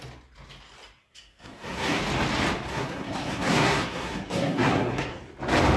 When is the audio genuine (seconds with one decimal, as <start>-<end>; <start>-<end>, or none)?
0.0-1.0; 2.0-2.7; 5.2-5.8